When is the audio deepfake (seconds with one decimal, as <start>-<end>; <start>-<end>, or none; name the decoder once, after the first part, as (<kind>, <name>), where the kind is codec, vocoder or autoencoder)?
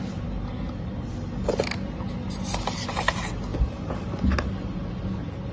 none